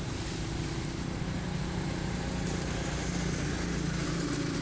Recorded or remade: recorded